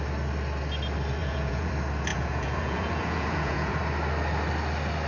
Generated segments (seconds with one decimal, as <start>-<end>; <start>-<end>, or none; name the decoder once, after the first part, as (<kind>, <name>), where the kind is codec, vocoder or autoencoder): 1.2-1.7 (vocoder, Vocos); 2.1-3.8